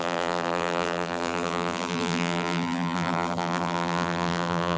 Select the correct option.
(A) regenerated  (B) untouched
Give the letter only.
A